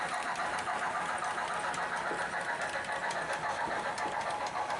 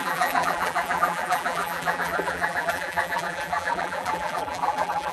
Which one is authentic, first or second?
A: first